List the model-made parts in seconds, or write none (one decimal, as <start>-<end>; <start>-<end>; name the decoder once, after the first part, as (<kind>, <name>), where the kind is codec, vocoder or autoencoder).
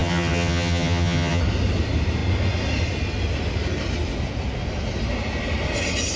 0.0-1.4 (vocoder, HiFi-GAN)